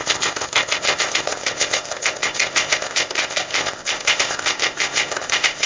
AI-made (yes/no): yes